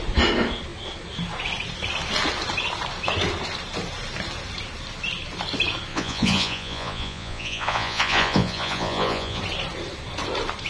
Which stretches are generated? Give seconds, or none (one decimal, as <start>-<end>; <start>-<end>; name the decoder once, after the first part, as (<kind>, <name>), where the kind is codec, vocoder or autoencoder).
5.9-9.4 (vocoder, Vocos)